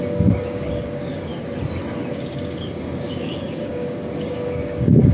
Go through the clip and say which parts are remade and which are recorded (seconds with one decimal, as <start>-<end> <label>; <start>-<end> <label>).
0.0-1.3 remade; 1.3-2.1 recorded; 2.1-5.1 remade